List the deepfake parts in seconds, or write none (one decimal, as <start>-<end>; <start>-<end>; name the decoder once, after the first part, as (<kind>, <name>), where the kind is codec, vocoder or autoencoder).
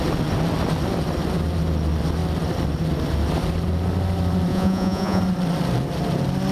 4.5-5.2 (vocoder, Vocos)